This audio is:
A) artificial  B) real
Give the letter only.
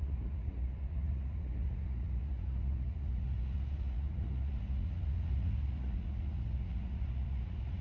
A